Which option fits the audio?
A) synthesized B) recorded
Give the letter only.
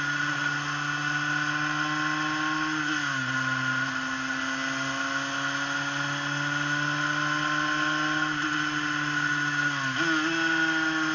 B